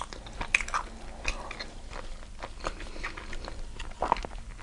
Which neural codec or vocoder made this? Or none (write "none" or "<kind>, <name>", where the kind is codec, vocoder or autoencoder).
none